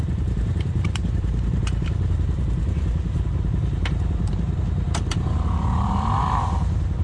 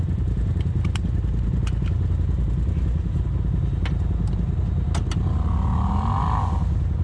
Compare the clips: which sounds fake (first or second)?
first